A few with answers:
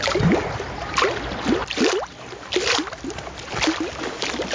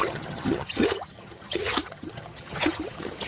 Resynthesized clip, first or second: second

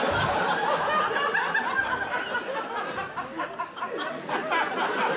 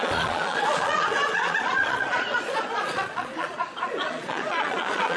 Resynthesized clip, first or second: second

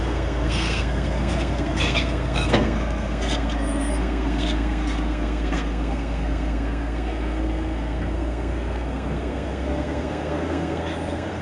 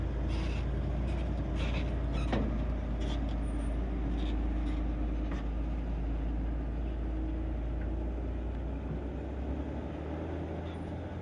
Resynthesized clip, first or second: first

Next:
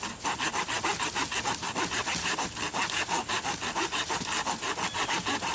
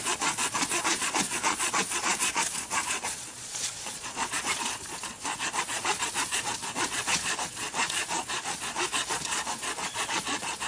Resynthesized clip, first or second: second